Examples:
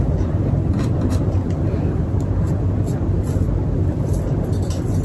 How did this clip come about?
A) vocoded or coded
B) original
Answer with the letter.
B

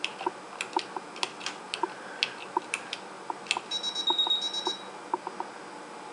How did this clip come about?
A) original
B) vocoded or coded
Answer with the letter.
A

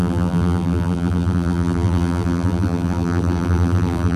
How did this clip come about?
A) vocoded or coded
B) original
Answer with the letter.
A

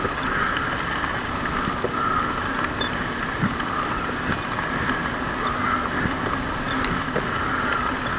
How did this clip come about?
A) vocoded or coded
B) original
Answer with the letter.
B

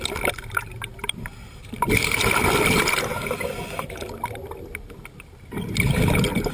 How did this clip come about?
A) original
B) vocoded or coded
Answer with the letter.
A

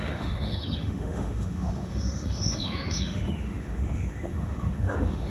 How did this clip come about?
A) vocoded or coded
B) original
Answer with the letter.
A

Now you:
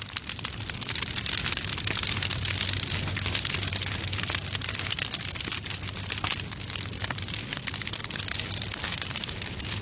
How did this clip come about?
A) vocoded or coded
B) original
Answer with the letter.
B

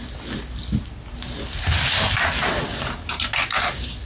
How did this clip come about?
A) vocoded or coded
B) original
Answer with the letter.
B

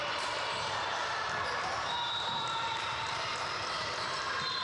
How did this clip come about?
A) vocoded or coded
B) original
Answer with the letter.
A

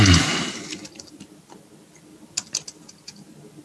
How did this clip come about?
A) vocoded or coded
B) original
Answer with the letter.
B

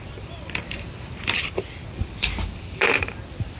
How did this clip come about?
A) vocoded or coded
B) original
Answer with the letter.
A